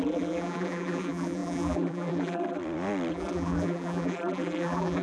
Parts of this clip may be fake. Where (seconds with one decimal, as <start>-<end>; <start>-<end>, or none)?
0.0-2.6; 3.1-5.0